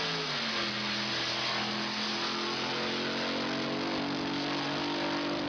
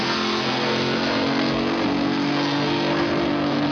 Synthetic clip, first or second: second